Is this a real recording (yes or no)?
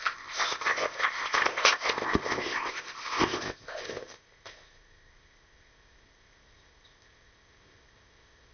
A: no